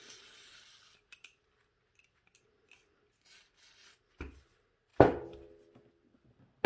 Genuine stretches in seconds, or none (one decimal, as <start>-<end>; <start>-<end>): 0.0-6.7